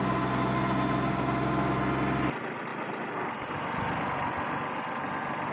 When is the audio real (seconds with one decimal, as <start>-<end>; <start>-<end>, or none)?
0.0-5.5